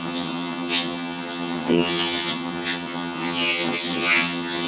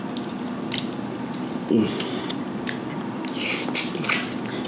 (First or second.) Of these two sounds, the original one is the second